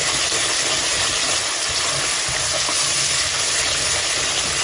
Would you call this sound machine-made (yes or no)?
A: no